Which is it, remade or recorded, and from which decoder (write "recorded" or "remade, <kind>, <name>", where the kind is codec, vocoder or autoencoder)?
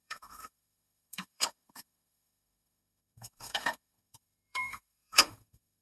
remade, autoencoder, DAC-VAE